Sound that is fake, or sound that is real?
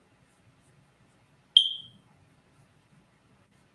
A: real